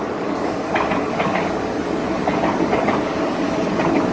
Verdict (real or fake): fake